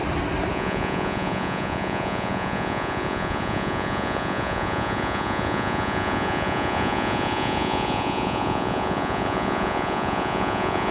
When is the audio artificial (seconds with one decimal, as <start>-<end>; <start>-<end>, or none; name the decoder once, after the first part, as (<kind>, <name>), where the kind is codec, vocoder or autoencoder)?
0.5-10.9 (vocoder, Vocos)